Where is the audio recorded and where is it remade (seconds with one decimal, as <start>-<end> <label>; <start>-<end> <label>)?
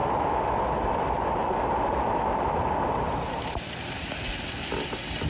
0.0-5.3 recorded